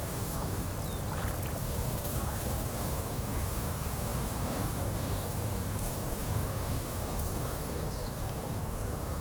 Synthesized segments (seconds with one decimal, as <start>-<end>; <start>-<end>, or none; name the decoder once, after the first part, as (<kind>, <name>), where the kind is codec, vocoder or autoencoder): 0.0-0.7 (codec, DAC); 1.6-9.2